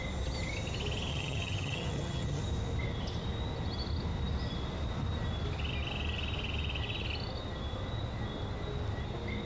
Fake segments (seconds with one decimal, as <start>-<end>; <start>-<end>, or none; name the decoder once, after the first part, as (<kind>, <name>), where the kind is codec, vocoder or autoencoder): 1.1-2.4 (vocoder, HiFi-GAN)